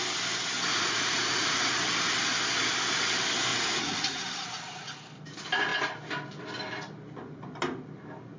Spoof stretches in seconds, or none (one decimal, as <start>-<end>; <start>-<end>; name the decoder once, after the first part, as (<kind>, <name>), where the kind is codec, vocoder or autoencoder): 0.7-1.7 (vocoder, Vocos); 3.5-4.2